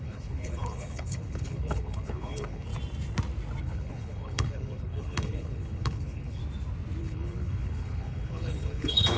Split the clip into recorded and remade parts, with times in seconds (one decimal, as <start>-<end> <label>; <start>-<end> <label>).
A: 0.0-2.7 remade; 2.7-3.6 recorded; 3.6-6.4 remade; 6.4-7.0 recorded; 7.0-9.2 remade